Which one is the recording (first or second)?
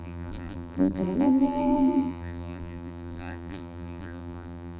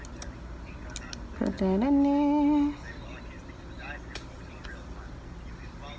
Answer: second